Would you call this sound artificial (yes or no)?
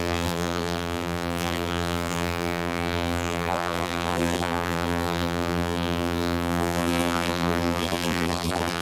yes